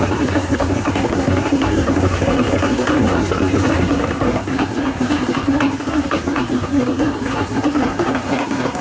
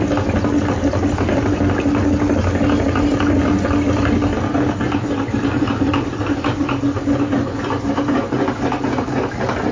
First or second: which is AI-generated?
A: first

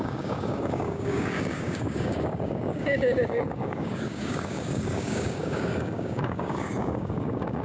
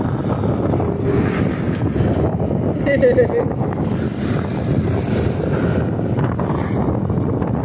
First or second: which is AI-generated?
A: first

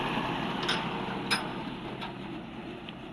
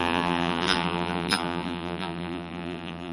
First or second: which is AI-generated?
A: second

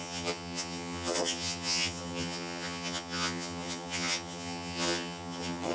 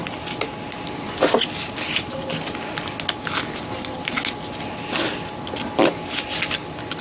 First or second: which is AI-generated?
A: first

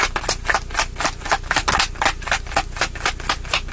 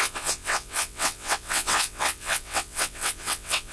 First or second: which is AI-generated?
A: second